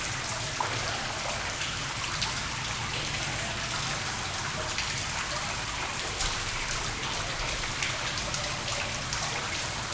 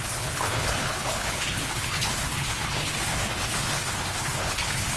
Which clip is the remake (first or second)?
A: second